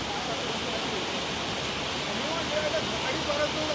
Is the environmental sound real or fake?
real